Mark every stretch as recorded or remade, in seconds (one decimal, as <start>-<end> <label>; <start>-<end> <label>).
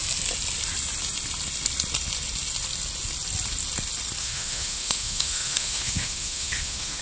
0.0-4.2 recorded; 4.2-7.0 remade